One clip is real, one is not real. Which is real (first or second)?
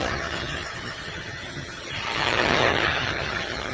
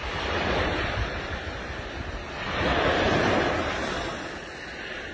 second